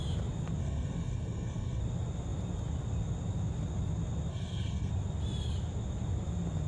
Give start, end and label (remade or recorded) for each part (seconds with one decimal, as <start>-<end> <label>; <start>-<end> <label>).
0.0-0.6 recorded; 0.6-1.8 remade; 1.8-4.3 recorded; 4.3-4.9 remade; 4.9-6.7 recorded